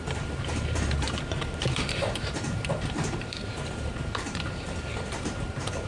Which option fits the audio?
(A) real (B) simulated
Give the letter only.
B